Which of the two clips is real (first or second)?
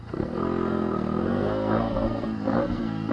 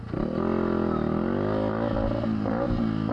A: second